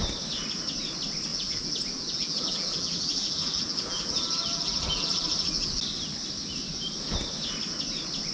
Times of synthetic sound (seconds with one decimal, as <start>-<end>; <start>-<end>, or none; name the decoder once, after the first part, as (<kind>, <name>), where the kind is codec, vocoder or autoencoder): 1.3-5.8 (vocoder, BigVGAN v2)